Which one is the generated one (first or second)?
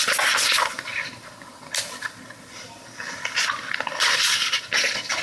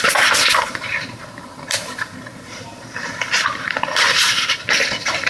second